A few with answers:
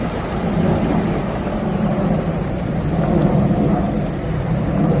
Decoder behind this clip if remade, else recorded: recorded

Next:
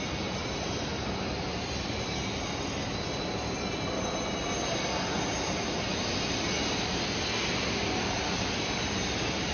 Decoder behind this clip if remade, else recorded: recorded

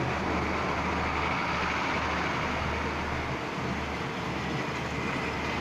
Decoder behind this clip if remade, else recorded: recorded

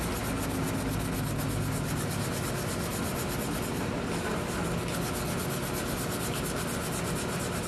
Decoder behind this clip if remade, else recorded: recorded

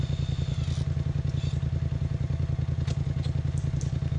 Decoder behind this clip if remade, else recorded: recorded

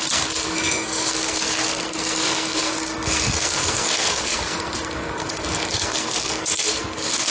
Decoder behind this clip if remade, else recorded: remade, codec, SNAC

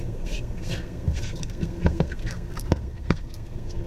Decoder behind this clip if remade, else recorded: remade, codec, SNAC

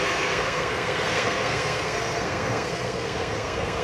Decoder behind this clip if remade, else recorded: remade, codec, SNAC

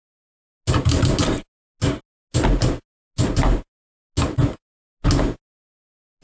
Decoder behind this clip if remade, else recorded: recorded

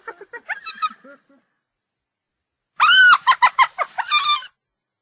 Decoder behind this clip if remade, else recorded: recorded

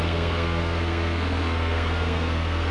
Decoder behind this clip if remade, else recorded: remade, codec, SNAC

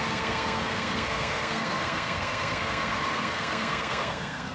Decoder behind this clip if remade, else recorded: remade, codec, SNAC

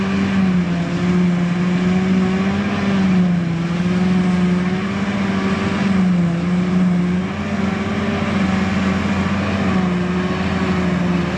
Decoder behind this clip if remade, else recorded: recorded